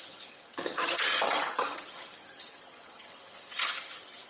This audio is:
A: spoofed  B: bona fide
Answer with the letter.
A